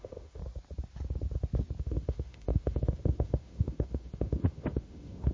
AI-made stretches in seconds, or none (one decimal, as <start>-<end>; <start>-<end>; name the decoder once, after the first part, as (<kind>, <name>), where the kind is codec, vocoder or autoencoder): 0.0-0.4 (autoencoder, DAC-VAE); 1.8-5.3